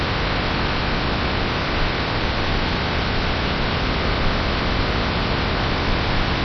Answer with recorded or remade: recorded